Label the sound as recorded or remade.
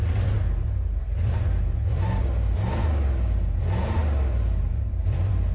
recorded